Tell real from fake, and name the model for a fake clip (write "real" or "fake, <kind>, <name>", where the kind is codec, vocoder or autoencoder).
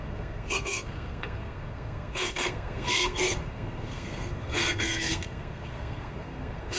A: fake, codec, SNAC